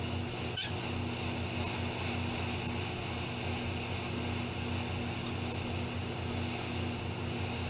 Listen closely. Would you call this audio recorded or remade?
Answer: recorded